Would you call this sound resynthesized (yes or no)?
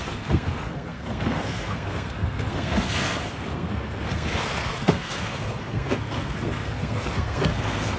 yes